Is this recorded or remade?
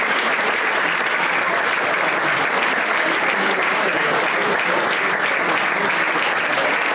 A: recorded